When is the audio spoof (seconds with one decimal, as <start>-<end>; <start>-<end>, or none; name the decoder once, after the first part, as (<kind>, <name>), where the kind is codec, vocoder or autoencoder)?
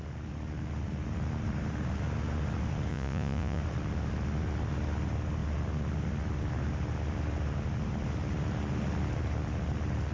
2.9-3.6 (vocoder, Vocos)